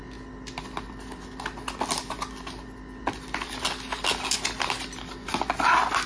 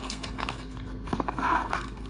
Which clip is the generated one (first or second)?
second